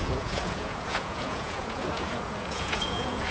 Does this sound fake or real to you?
fake